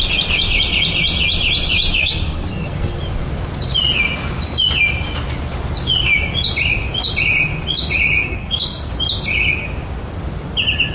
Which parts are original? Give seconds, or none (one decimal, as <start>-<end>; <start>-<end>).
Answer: 0.0-2.0; 3.0-8.2; 8.9-10.9